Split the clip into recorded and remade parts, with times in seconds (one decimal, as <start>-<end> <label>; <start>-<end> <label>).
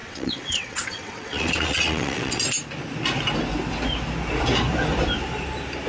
0.0-2.4 remade; 2.4-5.9 recorded